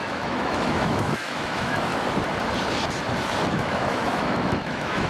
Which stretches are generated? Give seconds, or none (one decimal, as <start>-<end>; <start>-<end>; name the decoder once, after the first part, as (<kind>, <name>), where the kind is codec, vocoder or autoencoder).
0.0-1.9 (autoencoder, DAC-VAE); 3.5-5.1